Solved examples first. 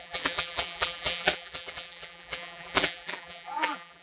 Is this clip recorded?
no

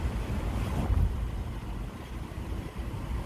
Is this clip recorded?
no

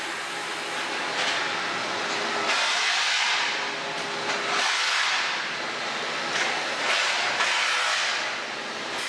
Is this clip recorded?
yes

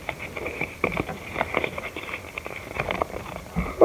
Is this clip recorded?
no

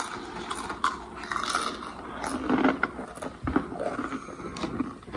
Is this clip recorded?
yes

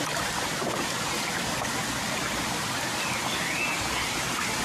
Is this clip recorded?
yes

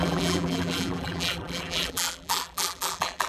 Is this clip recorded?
no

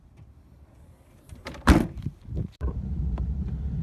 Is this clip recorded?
no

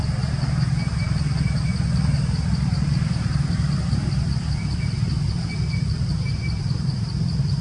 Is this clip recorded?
yes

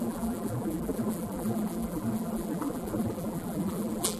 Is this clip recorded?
no